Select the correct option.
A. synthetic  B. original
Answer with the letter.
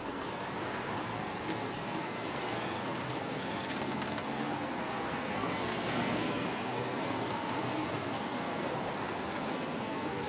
A